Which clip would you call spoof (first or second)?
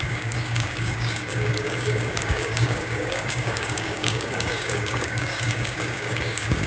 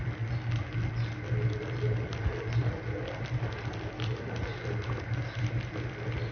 first